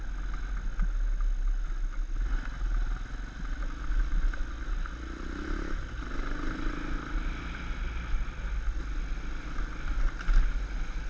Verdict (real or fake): real